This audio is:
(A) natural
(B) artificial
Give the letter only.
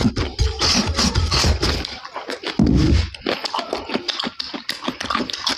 A